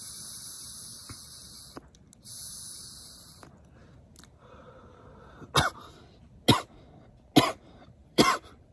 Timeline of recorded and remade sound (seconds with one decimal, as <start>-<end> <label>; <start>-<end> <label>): 0.0-8.0 recorded; 8.0-8.7 remade